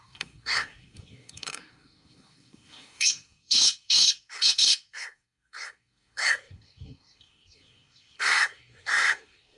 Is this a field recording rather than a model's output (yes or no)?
no